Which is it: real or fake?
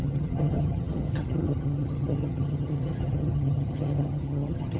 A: fake